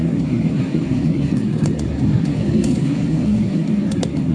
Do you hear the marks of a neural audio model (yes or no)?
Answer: yes